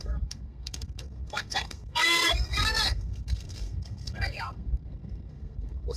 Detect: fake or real fake